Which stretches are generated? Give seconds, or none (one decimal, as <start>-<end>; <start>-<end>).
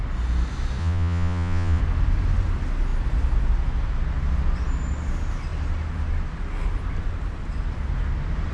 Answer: 0.8-1.8